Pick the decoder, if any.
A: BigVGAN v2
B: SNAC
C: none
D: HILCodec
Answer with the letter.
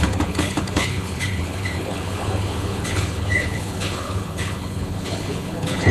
D